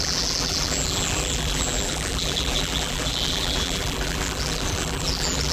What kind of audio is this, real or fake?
fake